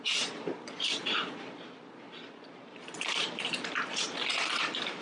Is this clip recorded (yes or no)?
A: no